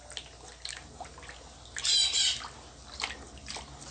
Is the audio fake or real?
real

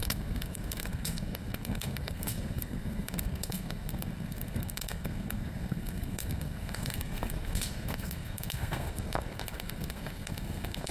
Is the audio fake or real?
fake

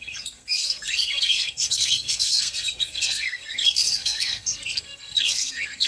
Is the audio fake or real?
fake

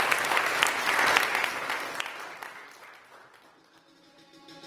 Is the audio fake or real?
real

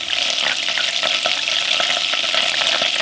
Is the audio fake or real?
real